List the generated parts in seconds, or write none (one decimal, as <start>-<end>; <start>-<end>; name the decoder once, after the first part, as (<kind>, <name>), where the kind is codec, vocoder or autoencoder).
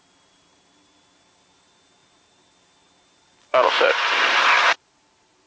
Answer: 0.0-5.5 (vocoder, BigVGAN v2)